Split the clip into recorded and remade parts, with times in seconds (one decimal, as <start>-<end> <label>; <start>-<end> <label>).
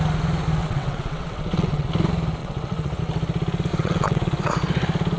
0.0-0.6 recorded; 0.6-1.9 remade; 1.9-2.4 recorded; 2.4-3.0 remade; 3.0-3.7 recorded; 3.7-4.5 remade; 4.5-5.2 recorded